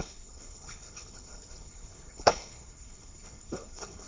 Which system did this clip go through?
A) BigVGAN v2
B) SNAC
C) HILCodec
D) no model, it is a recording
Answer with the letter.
C